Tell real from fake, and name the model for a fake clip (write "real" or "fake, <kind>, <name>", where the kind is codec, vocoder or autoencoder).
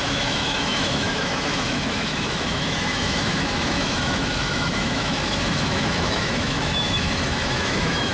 fake, autoencoder, DAC-VAE